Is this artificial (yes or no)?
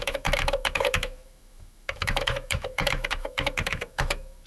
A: yes